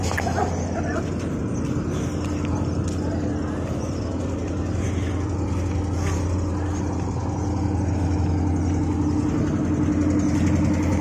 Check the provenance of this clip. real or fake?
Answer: real